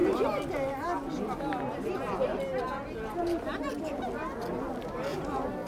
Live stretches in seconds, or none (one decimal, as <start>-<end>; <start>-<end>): 0.0-5.7